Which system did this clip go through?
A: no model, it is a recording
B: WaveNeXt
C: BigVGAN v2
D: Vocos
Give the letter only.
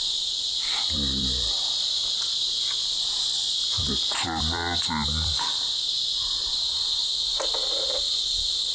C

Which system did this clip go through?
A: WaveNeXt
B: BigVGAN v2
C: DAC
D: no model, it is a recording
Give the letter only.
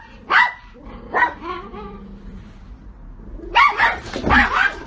D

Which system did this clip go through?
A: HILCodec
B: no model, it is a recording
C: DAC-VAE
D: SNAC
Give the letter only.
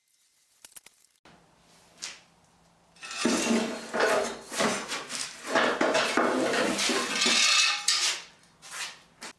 B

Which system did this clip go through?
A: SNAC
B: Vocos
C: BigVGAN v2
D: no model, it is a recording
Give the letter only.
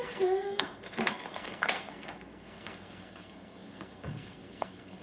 A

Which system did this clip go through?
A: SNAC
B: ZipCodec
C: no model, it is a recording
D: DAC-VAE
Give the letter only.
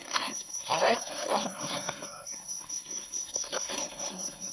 A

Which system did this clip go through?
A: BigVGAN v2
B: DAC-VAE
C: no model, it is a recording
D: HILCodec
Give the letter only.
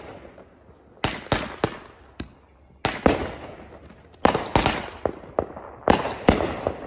C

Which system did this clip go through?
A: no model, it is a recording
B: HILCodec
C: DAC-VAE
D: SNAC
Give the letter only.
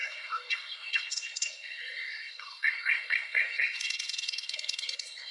D